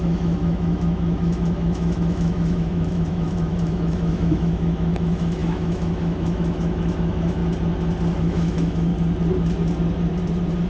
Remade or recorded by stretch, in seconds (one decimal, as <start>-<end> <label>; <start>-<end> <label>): 0.0-7.4 remade; 7.4-8.2 recorded; 8.2-8.9 remade; 8.9-10.7 recorded